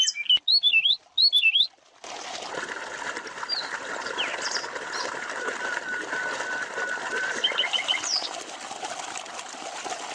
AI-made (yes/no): no